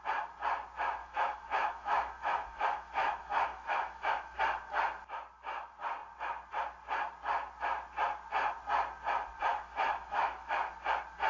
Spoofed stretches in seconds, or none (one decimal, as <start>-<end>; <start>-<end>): 1.0-4.4; 9.5-10.5

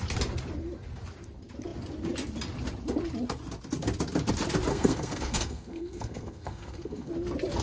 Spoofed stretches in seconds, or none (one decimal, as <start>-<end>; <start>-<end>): 4.7-7.1

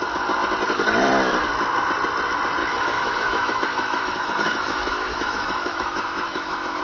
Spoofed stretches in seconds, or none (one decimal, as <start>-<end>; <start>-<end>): 2.6-6.8

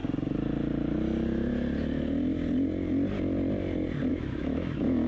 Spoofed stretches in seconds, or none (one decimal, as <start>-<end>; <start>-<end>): 4.1-5.1

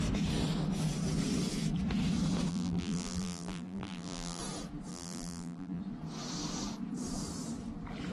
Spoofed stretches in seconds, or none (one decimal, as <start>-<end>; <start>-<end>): 2.5-4.4; 4.9-5.8

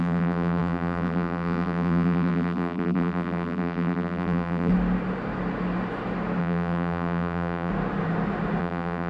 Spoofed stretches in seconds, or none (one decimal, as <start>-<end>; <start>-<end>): 0.0-4.7; 6.4-7.7; 8.6-9.1